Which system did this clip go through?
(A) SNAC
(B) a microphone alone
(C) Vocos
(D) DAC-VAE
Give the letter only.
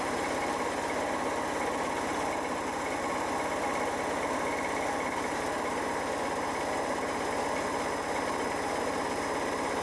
B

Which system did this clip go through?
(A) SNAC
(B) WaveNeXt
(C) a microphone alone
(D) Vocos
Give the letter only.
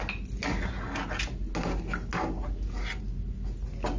C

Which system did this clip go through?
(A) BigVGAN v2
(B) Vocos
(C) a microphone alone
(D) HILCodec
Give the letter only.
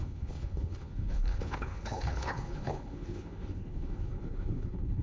D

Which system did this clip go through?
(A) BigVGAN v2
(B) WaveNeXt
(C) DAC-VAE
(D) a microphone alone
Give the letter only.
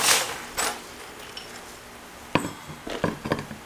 D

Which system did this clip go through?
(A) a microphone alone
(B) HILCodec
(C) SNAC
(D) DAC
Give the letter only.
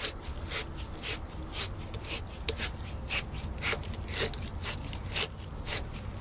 A